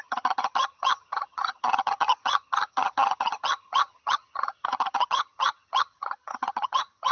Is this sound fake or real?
fake